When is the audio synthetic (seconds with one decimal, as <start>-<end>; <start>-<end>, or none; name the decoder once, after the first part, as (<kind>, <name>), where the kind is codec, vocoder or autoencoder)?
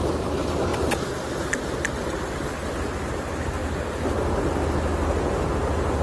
0.7-1.8 (vocoder, BigVGAN v2)